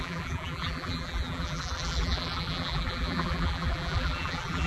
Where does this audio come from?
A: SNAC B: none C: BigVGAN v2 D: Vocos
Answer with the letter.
C